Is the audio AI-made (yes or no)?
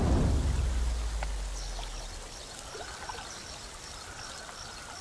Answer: no